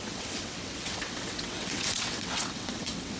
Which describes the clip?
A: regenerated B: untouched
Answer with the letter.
A